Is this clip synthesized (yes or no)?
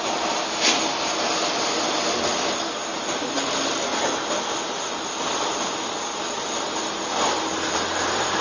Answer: no